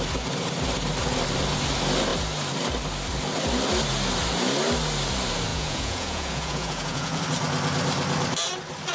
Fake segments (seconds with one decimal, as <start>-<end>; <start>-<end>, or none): 5.5-7.2